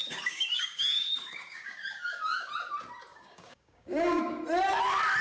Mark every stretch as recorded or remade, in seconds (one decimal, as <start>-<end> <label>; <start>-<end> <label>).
0.0-2.5 remade; 2.5-3.1 recorded; 3.1-4.2 remade; 4.2-5.2 recorded